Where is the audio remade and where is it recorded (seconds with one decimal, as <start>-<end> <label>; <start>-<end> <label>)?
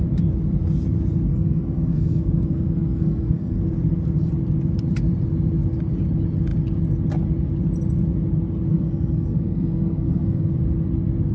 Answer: 0.0-1.3 recorded; 1.3-3.6 remade; 3.6-8.7 recorded; 8.7-10.5 remade; 10.5-11.3 recorded